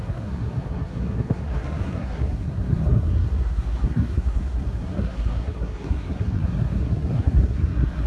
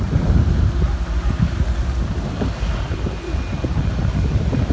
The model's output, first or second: first